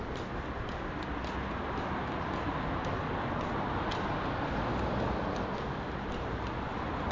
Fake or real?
real